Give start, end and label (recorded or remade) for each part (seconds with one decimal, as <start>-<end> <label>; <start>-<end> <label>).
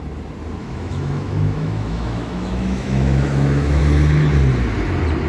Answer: 0.0-0.6 recorded; 0.6-3.8 remade; 3.8-5.3 recorded